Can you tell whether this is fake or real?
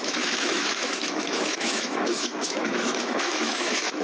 fake